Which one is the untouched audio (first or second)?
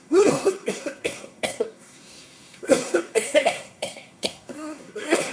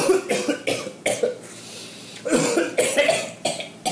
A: second